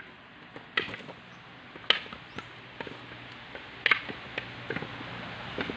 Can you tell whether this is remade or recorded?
recorded